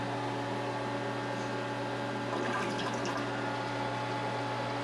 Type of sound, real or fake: real